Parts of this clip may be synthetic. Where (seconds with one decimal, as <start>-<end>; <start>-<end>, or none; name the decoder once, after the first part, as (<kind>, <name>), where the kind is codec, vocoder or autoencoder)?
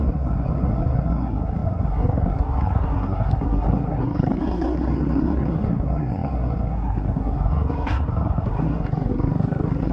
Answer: 0.0-9.9 (codec, SNAC)